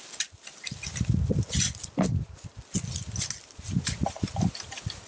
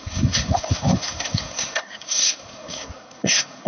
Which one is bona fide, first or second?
first